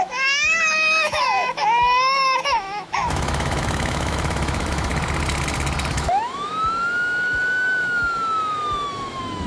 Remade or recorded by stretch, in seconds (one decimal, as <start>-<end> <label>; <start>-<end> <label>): 0.0-4.9 remade; 4.9-5.9 recorded; 5.9-9.5 remade